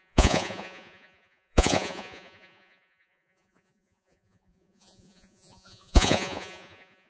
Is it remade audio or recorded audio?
remade